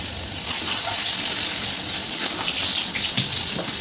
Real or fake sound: real